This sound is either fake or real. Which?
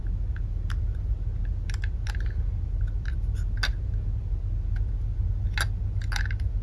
real